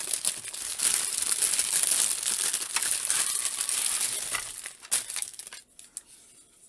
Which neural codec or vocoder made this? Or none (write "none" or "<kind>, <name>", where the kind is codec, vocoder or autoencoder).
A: none